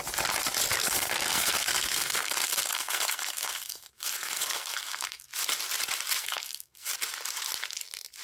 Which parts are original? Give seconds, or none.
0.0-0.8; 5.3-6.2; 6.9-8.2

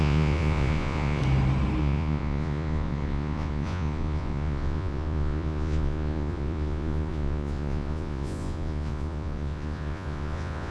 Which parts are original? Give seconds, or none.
1.2-1.8

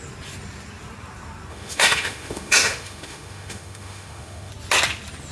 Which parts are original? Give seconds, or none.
0.0-1.5; 4.5-5.3

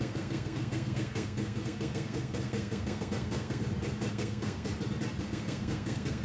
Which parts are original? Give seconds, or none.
3.6-4.1; 4.7-5.2